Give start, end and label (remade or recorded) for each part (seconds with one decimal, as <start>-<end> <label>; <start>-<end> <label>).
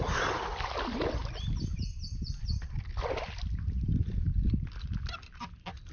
0.0-5.9 recorded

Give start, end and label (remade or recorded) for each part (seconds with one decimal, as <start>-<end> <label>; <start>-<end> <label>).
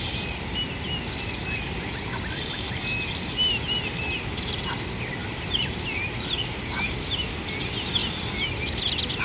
0.0-9.2 recorded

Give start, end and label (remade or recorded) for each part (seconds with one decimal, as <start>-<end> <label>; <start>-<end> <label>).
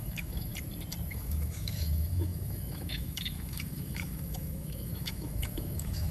0.0-0.5 remade; 0.5-1.1 recorded; 1.1-6.1 remade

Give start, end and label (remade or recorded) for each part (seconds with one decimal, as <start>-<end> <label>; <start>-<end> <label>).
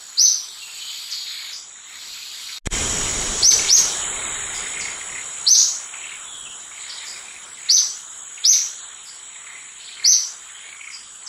0.0-3.1 recorded; 3.1-3.9 remade; 3.9-11.3 recorded